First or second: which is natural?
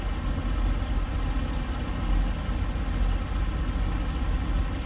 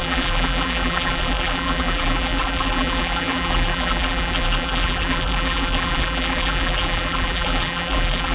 first